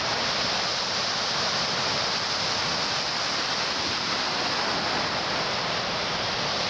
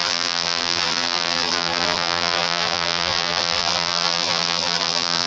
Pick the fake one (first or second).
second